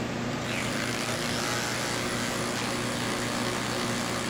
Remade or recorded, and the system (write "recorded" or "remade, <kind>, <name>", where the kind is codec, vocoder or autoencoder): recorded